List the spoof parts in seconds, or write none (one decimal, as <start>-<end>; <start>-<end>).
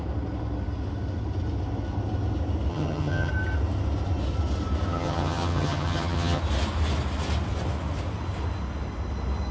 2.7-3.3; 4.9-6.4